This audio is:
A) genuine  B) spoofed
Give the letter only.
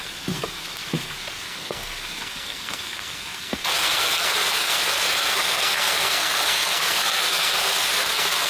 B